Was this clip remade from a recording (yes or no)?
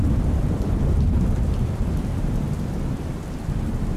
no